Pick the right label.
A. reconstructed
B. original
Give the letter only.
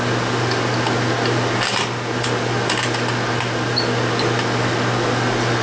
B